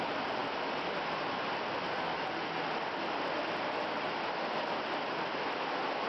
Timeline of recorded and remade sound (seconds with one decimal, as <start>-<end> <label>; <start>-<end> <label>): 0.0-6.1 recorded